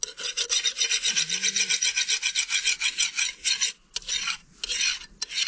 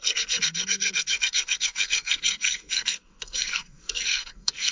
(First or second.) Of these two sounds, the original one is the first